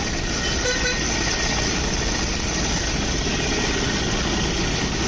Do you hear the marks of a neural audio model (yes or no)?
no